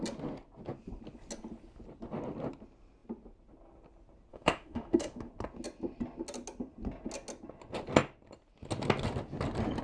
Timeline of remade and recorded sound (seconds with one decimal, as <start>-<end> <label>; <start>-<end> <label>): 0.0-4.3 recorded; 4.3-5.3 remade; 5.3-9.8 recorded